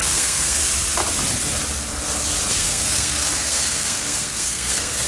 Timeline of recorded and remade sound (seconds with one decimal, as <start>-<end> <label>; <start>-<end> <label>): 0.0-0.6 remade; 0.6-2.5 recorded; 2.5-5.1 remade